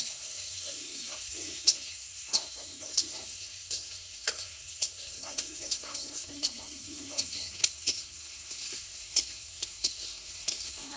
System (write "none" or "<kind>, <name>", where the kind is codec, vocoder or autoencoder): codec, SNAC